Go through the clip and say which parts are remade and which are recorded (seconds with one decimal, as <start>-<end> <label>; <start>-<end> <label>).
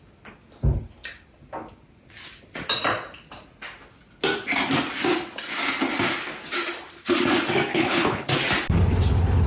0.0-7.7 recorded; 7.7-8.3 remade; 8.3-9.5 recorded